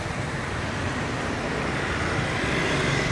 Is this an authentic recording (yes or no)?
yes